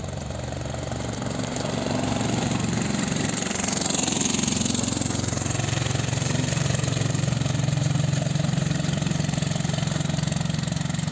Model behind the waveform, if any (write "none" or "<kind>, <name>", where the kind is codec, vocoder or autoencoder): vocoder, BigVGAN v2